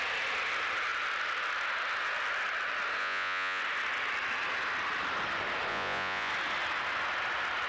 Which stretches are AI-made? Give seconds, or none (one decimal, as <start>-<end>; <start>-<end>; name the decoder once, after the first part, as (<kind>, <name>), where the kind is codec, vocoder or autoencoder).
3.0-3.6 (vocoder, Vocos); 5.7-6.3